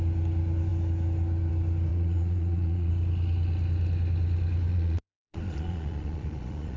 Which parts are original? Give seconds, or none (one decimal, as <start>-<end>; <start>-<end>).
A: 0.0-1.9; 2.9-4.7